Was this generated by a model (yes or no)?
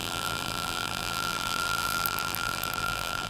yes